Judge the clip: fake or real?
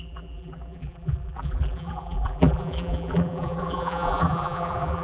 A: fake